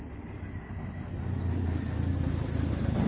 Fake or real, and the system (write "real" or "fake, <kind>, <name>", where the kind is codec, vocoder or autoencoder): real